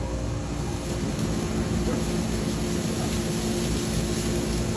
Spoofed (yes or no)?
no